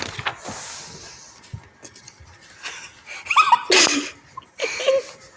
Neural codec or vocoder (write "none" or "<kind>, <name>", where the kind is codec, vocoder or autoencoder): none